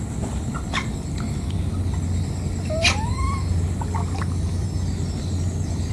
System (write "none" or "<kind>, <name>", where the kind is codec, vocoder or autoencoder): none